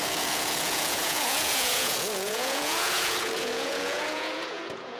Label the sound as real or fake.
fake